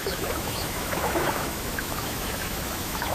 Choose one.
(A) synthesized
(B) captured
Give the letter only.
A